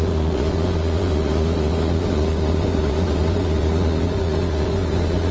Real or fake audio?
fake